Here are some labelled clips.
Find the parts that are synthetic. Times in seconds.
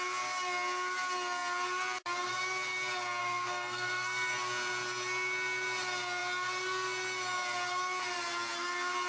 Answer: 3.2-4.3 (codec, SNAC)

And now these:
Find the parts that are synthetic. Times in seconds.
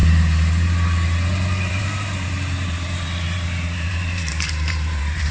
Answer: 1.7-5.3 (vocoder, BigVGAN v2)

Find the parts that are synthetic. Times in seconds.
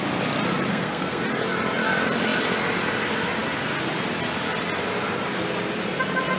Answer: 0.7-1.2 (codec, SNAC)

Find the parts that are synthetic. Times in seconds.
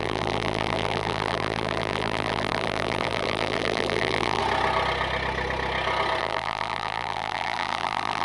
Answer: 0.0-4.4 (vocoder, BigVGAN v2); 6.2-8.2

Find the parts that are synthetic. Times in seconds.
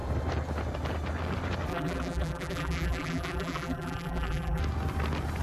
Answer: 1.7-4.6 (vocoder, BigVGAN v2)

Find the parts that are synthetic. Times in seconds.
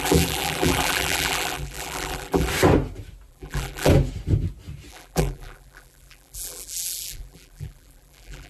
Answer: 0.0-2.5 (vocoder, BigVGAN v2); 3.3-3.9; 4.9-8.5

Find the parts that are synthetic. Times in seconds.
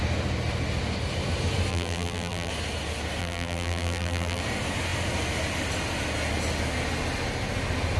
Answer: 1.7-2.5 (vocoder, BigVGAN v2); 3.2-4.4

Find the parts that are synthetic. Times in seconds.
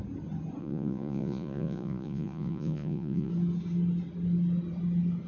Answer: 0.6-3.3 (vocoder, Vocos)